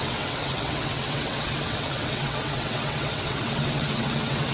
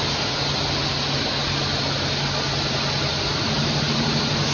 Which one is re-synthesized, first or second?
first